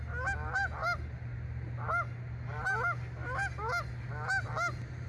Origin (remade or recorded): recorded